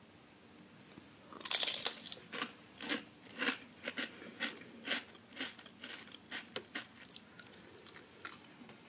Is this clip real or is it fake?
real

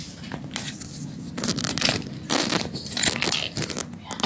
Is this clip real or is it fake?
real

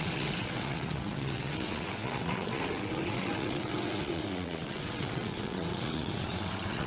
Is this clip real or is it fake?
fake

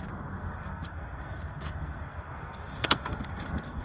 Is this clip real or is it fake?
fake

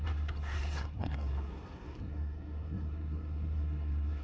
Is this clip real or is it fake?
fake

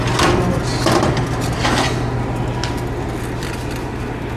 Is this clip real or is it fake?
real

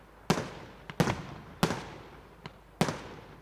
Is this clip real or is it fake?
real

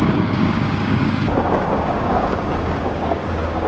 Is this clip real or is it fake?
fake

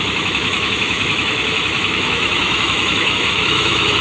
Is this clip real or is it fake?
fake